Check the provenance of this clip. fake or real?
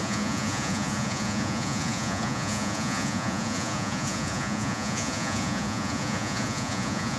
fake